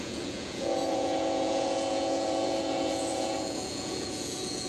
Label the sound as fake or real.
fake